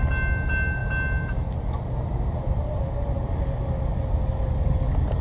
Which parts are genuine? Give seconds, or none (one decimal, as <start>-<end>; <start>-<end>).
0.0-5.2

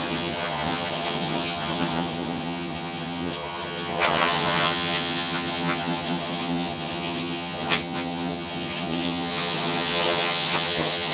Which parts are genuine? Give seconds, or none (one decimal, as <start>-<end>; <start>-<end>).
none

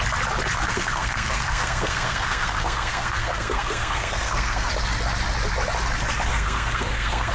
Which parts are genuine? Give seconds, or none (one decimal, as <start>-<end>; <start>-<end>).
0.0-0.7; 4.7-6.3

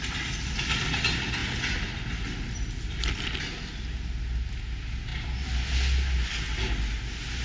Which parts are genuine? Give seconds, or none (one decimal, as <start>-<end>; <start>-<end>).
0.0-7.4

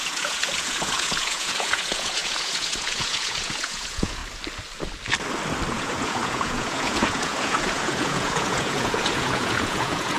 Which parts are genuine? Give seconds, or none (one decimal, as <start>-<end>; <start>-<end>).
4.2-5.7

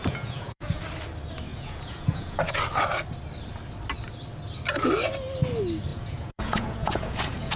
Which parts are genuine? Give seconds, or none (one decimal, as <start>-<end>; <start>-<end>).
0.8-1.5; 2.6-5.9